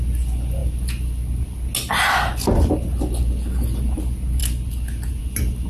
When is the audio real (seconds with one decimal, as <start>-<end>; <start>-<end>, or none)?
0.0-5.7